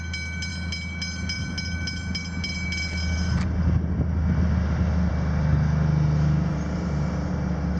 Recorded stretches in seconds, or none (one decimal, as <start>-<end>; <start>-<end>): 0.0-7.8